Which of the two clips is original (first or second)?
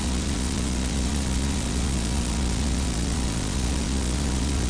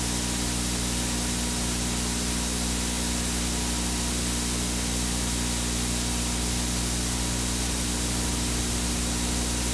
second